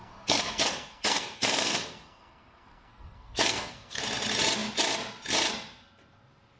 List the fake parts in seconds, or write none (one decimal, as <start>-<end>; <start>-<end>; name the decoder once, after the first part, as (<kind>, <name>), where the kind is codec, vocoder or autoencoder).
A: 0.0-4.0 (codec, SNAC)